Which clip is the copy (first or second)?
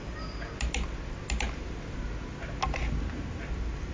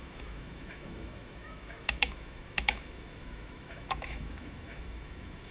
second